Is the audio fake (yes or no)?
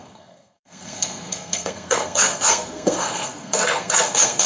yes